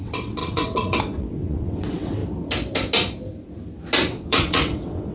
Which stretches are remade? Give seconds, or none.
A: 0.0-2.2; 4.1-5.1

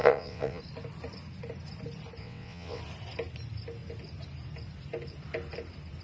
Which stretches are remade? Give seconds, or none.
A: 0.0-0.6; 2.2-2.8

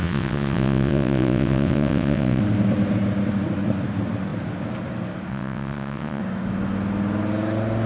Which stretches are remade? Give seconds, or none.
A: 0.0-2.4; 5.3-6.2

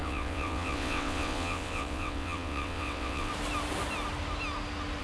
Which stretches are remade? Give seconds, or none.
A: 0.0-3.3

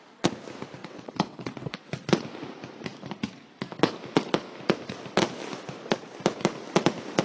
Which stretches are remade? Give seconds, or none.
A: 0.8-1.9

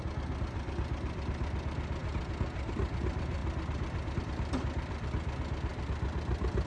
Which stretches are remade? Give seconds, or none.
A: none

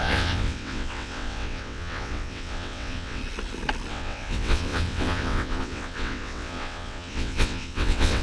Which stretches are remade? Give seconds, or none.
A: 0.0-3.2; 3.9-8.2

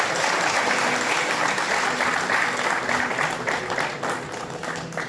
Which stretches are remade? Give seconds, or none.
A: none